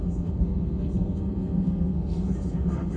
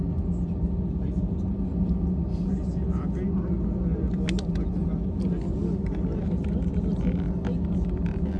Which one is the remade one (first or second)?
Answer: first